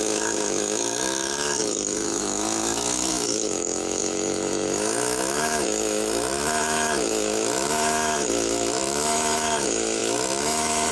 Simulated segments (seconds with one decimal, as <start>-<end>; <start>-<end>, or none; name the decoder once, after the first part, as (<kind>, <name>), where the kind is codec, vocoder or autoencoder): 0.0-10.9 (autoencoder, DAC-VAE)